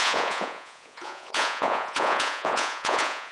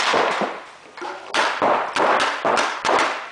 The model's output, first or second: first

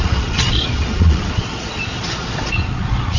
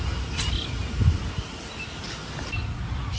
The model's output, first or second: first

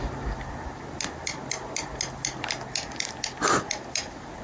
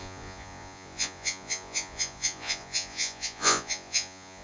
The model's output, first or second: second